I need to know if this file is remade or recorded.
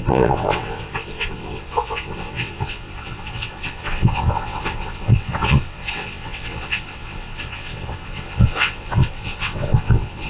remade